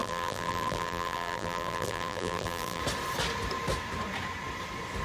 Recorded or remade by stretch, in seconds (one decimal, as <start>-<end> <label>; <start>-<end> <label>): 0.0-2.8 remade; 2.8-5.0 recorded